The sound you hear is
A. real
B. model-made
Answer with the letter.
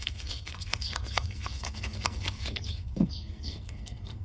B